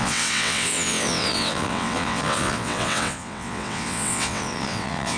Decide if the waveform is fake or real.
fake